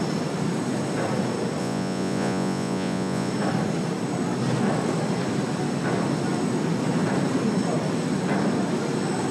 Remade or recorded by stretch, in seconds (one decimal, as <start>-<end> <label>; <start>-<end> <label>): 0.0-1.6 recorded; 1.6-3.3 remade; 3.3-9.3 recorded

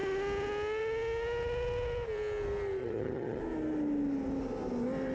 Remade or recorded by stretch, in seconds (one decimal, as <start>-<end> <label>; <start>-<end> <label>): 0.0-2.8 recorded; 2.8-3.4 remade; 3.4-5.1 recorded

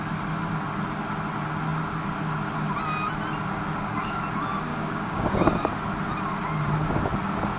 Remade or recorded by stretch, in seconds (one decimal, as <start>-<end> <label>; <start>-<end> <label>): 0.0-3.7 recorded; 3.7-4.2 remade; 4.2-4.7 recorded; 4.7-5.7 remade; 5.7-7.6 recorded

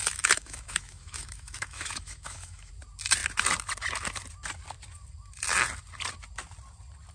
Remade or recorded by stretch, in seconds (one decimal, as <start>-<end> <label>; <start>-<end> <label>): 0.0-2.7 remade; 2.7-7.1 recorded

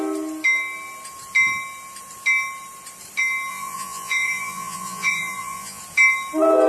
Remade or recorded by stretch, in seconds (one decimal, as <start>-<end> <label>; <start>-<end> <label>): 0.0-3.5 recorded; 3.5-5.8 remade; 5.8-6.7 recorded

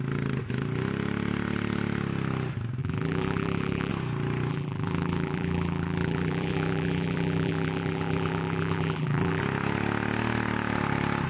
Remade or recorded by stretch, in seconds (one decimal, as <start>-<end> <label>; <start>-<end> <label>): 0.0-2.8 recorded; 2.8-3.9 remade; 3.9-4.5 recorded; 4.5-9.4 remade; 9.4-11.3 recorded

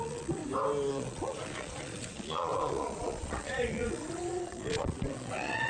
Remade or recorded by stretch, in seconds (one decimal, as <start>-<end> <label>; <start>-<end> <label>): 0.0-0.4 remade; 0.4-0.9 recorded; 0.9-5.7 remade